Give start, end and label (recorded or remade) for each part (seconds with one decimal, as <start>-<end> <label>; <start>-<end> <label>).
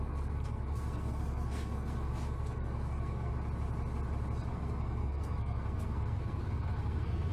0.0-3.3 remade; 3.3-4.5 recorded; 4.5-7.3 remade